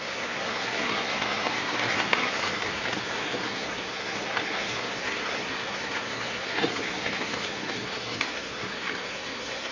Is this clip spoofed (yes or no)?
yes